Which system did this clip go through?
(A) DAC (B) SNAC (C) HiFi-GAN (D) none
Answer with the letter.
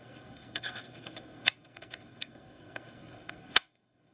B